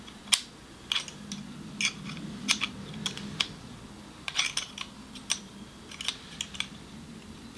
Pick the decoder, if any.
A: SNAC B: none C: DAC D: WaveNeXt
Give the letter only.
B